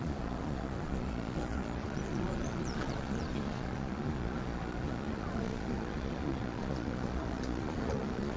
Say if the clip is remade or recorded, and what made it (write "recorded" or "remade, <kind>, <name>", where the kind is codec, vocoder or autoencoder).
remade, vocoder, Vocos